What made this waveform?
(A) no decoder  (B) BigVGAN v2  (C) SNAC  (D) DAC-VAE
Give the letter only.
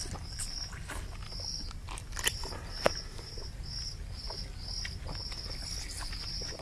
A